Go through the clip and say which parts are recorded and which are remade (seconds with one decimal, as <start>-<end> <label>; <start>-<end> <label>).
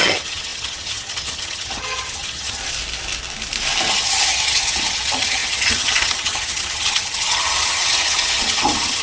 0.0-2.6 remade; 2.6-3.9 recorded; 3.9-9.0 remade